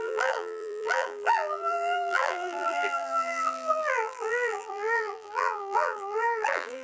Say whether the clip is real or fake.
fake